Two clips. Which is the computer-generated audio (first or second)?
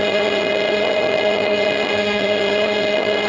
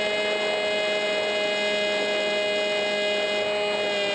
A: first